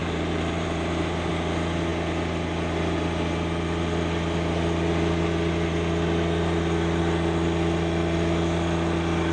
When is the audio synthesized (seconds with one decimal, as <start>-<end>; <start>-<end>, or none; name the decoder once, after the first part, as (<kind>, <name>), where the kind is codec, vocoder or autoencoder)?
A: 0.0-1.3 (vocoder, BigVGAN v2)